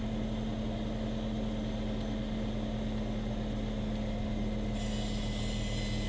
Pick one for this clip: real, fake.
real